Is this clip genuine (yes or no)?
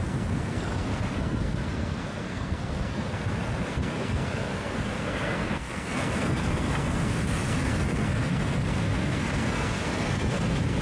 no